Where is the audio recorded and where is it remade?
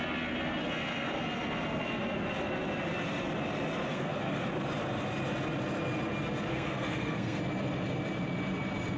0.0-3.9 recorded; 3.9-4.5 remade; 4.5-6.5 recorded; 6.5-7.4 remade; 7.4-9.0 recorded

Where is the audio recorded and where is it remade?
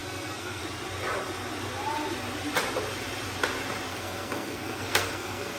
0.0-0.6 remade; 0.6-3.9 recorded; 3.9-5.6 remade